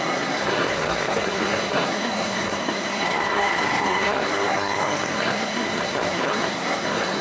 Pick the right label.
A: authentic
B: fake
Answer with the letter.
B